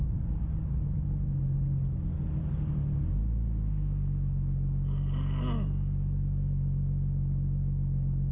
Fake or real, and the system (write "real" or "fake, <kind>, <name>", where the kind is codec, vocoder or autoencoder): real